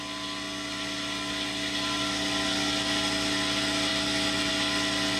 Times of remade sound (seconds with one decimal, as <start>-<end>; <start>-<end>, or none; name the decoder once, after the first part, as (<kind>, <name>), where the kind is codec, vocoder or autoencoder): none

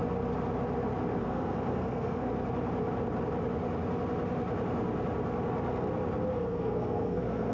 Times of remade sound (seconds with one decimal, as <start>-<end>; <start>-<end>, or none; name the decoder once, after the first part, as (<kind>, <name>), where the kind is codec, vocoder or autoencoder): 1.2-2.3 (codec, SNAC); 6.3-7.5

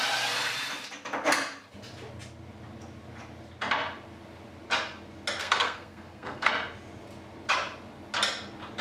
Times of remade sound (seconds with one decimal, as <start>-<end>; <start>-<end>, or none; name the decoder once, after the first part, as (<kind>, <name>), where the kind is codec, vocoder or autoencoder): 5.4-6.5 (codec, SNAC)

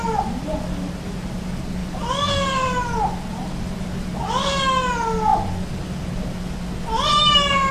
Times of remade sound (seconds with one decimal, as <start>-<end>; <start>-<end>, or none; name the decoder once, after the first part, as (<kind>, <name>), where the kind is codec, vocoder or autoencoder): none

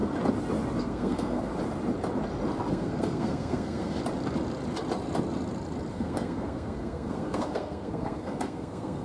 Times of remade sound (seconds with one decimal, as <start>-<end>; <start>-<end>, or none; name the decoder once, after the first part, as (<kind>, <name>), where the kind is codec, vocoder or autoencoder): 0.8-1.5 (codec, SNAC); 2.7-4.0; 5.9-9.0

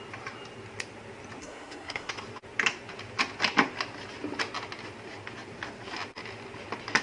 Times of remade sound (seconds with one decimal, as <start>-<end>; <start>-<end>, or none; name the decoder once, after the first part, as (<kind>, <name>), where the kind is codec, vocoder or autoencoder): 1.4-2.1 (codec, SNAC)

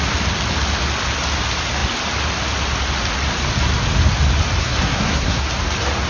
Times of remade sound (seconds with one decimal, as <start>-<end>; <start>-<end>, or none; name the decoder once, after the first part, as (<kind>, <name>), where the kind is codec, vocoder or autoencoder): 4.6-5.5 (codec, SNAC)